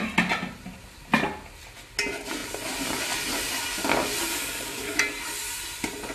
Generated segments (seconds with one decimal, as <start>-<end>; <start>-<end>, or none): 4.3-5.0

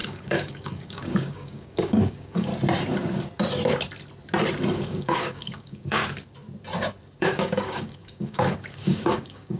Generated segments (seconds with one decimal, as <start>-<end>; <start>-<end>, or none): 0.0-2.5; 4.7-6.0; 7.2-9.6

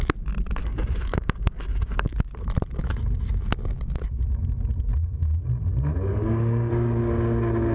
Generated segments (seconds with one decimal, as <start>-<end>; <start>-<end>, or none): 0.6-2.1; 6.1-6.7

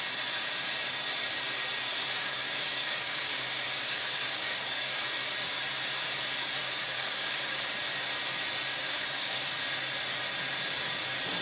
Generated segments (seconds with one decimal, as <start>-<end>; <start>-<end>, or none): 2.2-5.0; 6.6-7.6; 8.7-9.6

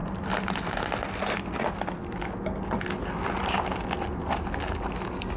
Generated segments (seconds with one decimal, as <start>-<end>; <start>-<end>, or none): none

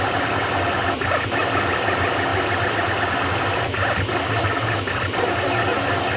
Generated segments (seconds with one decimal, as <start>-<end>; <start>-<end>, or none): none